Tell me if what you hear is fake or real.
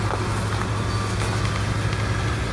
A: real